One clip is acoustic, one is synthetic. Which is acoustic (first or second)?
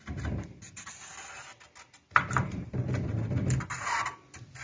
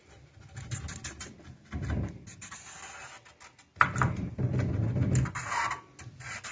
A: second